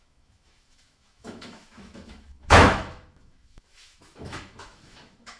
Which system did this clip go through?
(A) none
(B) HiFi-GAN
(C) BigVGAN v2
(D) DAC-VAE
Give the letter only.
D